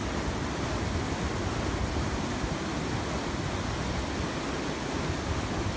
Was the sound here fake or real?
real